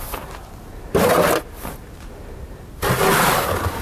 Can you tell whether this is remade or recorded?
recorded